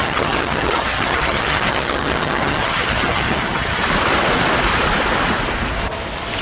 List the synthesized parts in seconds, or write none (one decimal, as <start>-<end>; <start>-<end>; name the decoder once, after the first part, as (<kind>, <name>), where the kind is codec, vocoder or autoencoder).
0.0-3.8 (vocoder, HiFi-GAN)